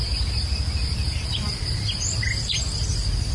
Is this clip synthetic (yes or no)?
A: no